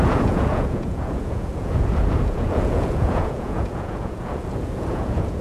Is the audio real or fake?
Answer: fake